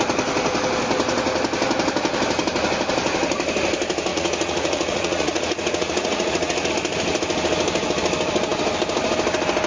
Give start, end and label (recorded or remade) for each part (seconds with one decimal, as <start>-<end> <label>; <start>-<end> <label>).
0.0-4.1 recorded; 4.1-6.7 remade; 6.7-9.7 recorded